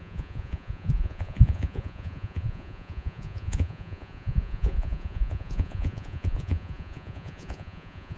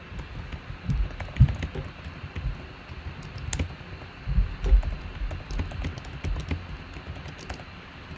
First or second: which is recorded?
second